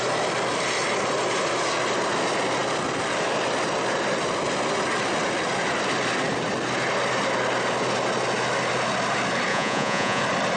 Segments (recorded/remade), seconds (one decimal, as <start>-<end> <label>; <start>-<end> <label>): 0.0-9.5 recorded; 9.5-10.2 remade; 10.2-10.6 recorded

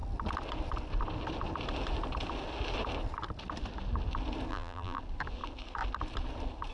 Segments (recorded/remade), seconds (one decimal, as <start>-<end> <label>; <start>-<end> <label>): 0.0-4.5 recorded; 4.5-5.0 remade; 5.0-6.7 recorded

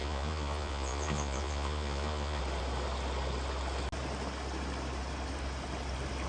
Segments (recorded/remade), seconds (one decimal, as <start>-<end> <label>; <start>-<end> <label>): 0.0-2.4 remade; 2.4-6.3 recorded

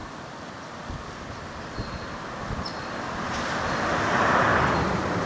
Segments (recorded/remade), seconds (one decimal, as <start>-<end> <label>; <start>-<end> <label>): 0.0-4.5 recorded; 4.5-5.3 remade